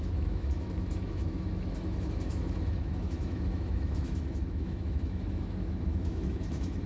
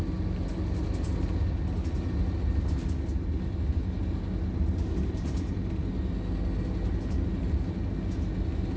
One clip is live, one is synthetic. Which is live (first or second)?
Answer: second